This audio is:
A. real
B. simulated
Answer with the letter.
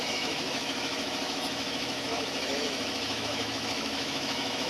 B